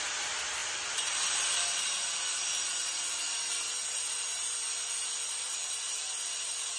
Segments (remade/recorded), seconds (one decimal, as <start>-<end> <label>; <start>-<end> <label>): 0.0-6.8 recorded